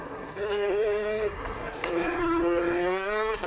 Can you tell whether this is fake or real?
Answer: fake